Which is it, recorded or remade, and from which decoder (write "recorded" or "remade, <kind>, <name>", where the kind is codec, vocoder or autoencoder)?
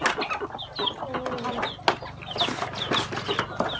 recorded